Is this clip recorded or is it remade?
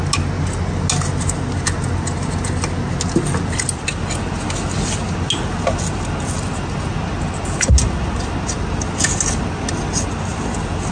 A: recorded